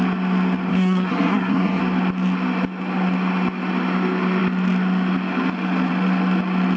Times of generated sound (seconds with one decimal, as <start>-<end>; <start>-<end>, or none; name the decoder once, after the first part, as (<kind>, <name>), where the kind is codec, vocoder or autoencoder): 0.7-1.8 (codec, SNAC)